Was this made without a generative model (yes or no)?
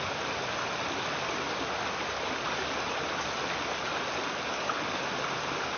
yes